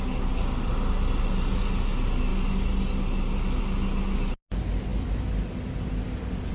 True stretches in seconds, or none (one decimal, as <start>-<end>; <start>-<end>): 0.0-4.9; 5.7-6.5